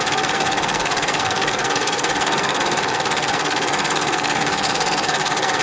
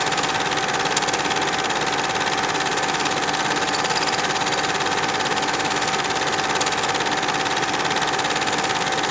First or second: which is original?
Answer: second